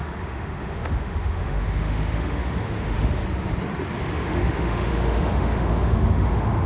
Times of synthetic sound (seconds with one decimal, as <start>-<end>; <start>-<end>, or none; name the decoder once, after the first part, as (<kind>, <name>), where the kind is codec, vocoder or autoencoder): 0.0-3.2 (autoencoder, DAC-VAE); 4.0-6.7